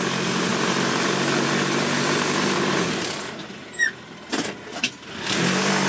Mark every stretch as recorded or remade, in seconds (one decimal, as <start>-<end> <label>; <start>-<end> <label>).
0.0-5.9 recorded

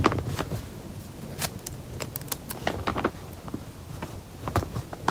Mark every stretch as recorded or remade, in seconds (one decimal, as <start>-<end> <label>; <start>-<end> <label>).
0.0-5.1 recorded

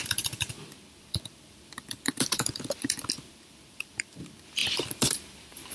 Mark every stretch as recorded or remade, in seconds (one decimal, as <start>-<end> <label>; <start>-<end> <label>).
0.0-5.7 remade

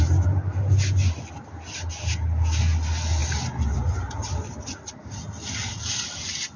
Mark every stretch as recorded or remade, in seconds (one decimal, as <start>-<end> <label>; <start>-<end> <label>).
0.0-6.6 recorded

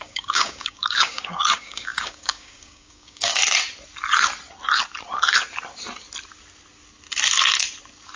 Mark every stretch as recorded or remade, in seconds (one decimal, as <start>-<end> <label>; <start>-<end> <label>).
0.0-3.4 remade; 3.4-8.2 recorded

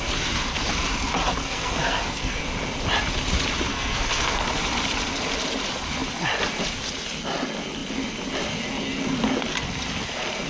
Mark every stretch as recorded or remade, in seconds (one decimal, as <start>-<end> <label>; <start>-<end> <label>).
0.0-1.4 recorded; 1.4-2.4 remade; 2.4-3.7 recorded; 3.7-4.4 remade; 4.4-10.5 recorded

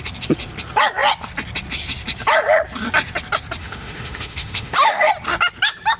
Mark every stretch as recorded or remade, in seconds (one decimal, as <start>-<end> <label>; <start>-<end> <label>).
0.0-3.6 recorded; 3.6-5.1 remade; 5.1-6.0 recorded

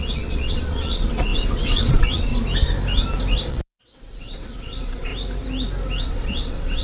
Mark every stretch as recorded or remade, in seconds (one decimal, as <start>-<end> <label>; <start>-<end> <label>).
0.0-2.3 remade; 2.3-3.5 recorded; 3.5-5.1 remade; 5.1-6.0 recorded; 6.0-6.8 remade